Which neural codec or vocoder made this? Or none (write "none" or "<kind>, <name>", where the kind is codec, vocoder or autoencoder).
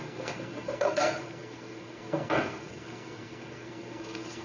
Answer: codec, SNAC